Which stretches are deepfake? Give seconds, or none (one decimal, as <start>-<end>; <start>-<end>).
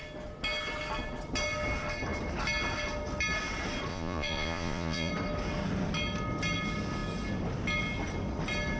3.9-5.1